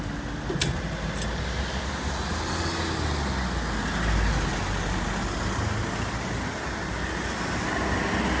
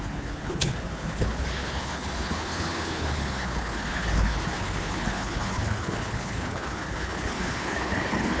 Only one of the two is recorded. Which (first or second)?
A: first